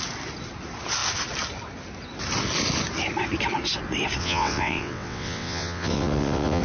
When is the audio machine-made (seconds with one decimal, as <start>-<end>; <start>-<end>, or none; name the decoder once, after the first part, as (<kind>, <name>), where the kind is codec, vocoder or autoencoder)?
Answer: 4.2-6.6 (vocoder, WaveNeXt)